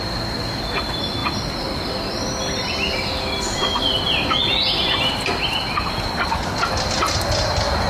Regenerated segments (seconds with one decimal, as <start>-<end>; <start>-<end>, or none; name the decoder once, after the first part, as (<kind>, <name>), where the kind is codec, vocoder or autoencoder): none